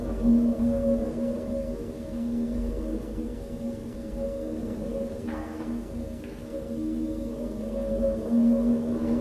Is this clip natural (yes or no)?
no